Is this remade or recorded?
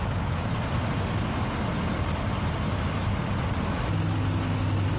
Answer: recorded